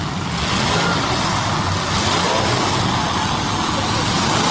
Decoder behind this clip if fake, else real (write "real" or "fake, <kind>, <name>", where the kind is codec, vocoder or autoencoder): real